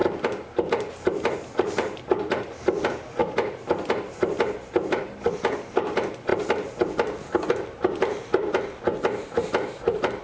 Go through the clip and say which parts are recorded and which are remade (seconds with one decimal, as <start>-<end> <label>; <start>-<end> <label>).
0.0-0.7 remade; 0.7-3.2 recorded; 3.2-4.1 remade; 4.1-6.3 recorded; 6.3-10.2 remade